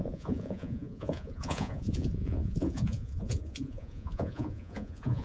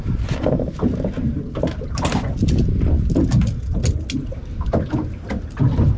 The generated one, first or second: first